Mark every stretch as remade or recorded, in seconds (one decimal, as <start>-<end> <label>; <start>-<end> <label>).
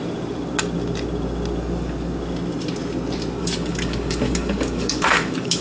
0.0-3.4 recorded; 3.4-5.6 remade